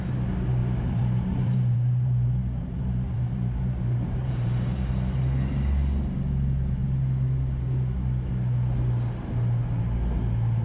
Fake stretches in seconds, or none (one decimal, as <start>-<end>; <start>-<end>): 0.6-4.9